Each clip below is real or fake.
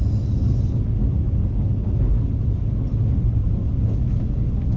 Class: real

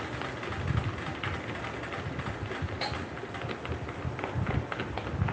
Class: real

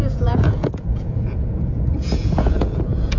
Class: fake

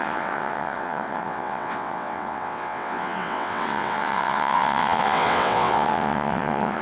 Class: fake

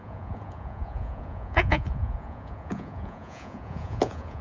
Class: fake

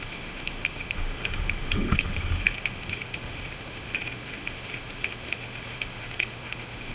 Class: fake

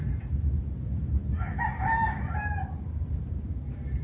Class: fake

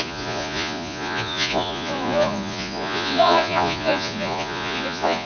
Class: fake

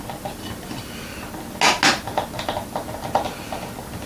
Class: real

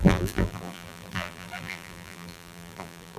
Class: fake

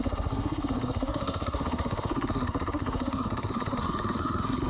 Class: fake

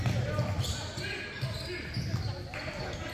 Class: real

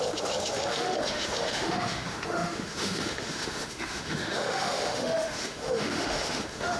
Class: fake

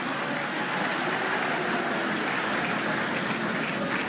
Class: real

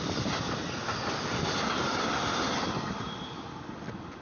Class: real